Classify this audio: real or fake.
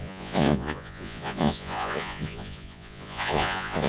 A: fake